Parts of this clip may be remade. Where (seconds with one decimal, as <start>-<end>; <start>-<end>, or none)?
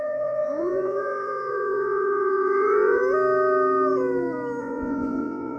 0.0-3.0; 4.6-5.6